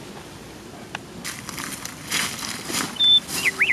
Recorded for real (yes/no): yes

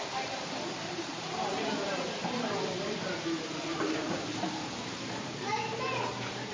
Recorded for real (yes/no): no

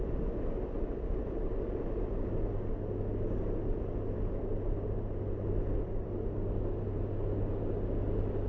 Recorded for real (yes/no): yes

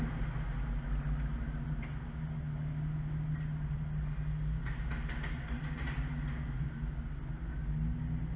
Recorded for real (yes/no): yes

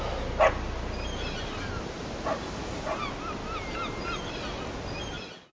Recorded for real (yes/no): yes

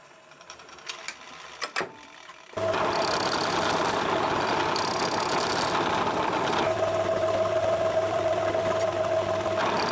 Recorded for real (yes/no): no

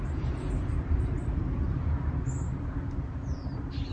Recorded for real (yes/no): no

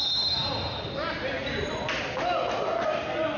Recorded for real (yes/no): yes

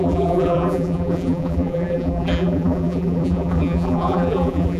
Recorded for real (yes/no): no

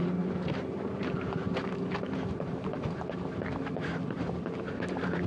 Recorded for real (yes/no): no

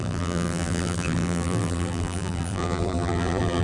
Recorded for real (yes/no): no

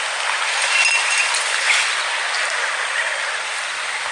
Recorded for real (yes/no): yes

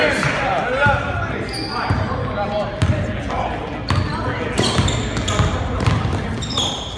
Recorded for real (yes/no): yes